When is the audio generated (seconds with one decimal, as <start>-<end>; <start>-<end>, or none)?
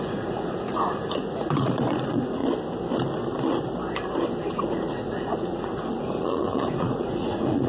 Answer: 0.0-2.4; 4.5-7.7